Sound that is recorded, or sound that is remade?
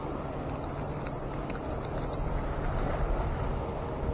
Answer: recorded